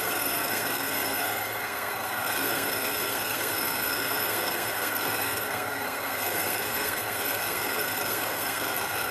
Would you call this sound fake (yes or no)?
yes